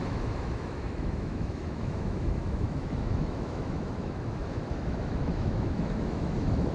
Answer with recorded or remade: remade